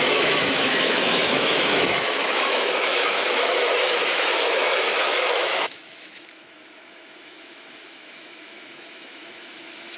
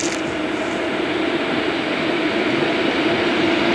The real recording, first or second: second